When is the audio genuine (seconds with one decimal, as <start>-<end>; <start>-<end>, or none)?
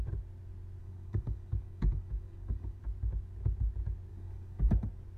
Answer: 0.0-0.8; 2.8-4.1; 4.7-5.2